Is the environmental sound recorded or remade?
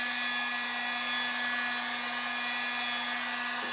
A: recorded